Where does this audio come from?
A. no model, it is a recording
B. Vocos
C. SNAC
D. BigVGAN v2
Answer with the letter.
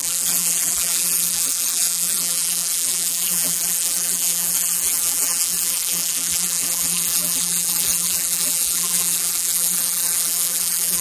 D